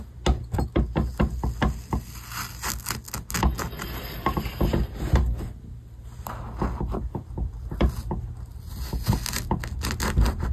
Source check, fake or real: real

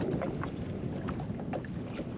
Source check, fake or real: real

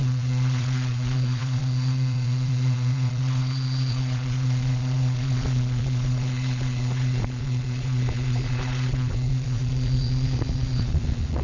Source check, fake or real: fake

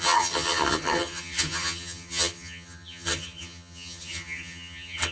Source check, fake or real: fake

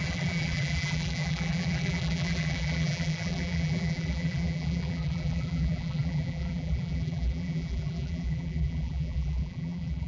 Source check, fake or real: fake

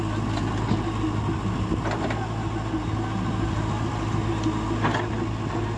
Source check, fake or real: real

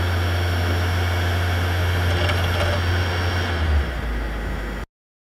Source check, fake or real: real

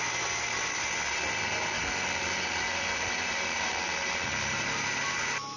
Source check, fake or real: real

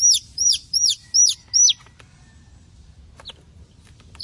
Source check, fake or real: real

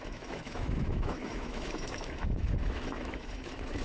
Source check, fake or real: fake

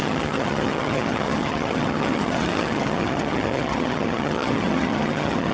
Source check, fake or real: fake